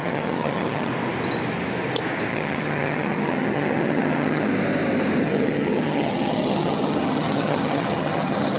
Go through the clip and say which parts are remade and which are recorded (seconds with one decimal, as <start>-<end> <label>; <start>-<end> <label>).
0.0-0.9 remade; 0.9-2.3 recorded; 2.3-4.5 remade; 4.5-5.2 recorded; 5.2-8.6 remade